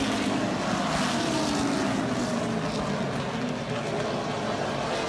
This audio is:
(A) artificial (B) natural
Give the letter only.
B